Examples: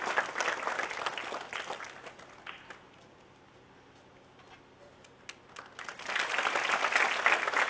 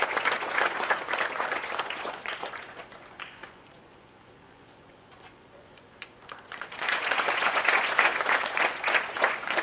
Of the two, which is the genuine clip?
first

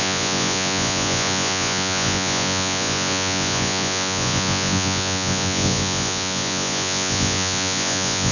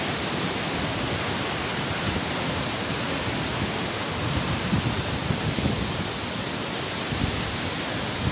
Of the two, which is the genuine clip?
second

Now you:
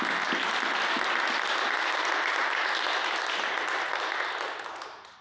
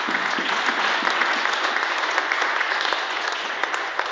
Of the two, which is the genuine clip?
first